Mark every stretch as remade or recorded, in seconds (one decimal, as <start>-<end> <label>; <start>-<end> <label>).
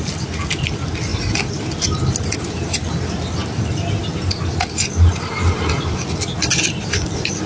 0.0-7.5 recorded